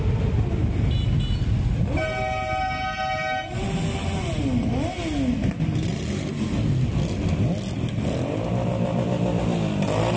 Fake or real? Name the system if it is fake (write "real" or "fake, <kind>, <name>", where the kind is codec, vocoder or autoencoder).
real